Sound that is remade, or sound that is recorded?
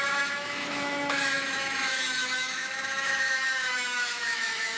remade